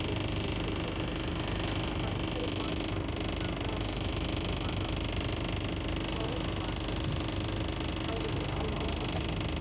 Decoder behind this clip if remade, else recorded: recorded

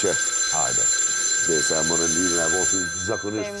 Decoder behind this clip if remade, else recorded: recorded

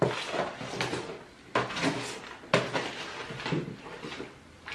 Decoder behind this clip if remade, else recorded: recorded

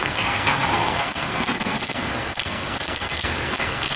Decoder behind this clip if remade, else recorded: remade, codec, SNAC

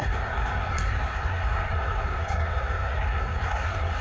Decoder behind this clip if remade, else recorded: remade, codec, SNAC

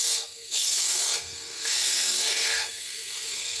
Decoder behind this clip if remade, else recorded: remade, codec, SNAC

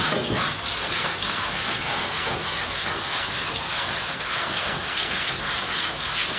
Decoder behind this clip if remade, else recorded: remade, codec, SNAC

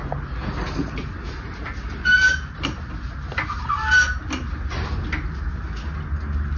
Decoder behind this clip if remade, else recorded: recorded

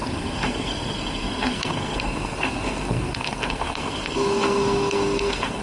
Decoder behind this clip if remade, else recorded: remade, codec, SNAC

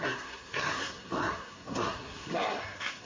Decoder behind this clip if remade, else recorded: remade, codec, SNAC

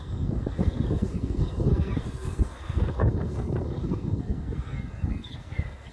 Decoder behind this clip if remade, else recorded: remade, codec, SNAC